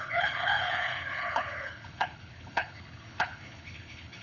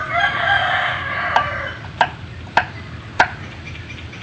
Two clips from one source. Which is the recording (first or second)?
second